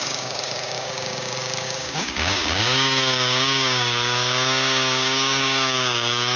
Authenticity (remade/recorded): remade